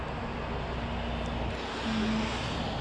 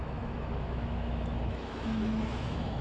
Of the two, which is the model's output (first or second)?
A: second